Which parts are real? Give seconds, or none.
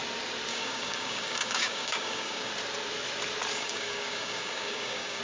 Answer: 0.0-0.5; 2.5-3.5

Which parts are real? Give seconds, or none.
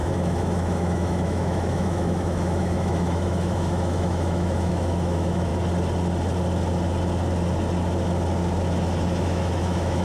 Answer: 5.5-9.2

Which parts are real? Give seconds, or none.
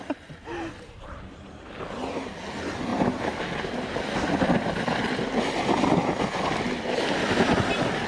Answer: 0.0-0.9; 1.7-2.9; 3.4-8.1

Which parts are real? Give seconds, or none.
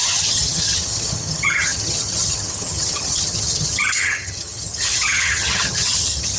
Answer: none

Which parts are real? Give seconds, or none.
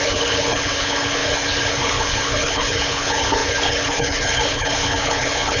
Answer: none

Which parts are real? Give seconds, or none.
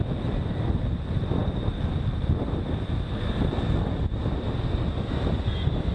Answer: 0.0-5.9